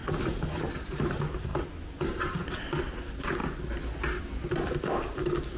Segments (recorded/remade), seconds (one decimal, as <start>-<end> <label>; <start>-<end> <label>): 0.0-0.7 remade; 0.7-5.6 recorded